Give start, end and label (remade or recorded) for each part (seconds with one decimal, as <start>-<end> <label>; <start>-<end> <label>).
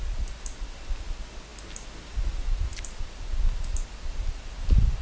0.0-5.0 recorded